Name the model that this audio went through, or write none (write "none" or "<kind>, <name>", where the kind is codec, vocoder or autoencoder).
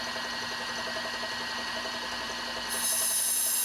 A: none